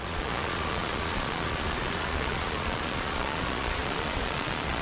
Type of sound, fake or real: fake